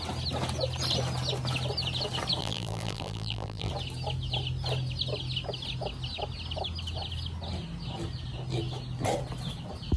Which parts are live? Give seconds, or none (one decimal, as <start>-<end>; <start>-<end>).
0.0-2.4; 3.7-10.0